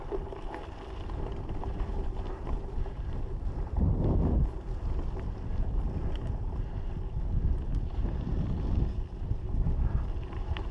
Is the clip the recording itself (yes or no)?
no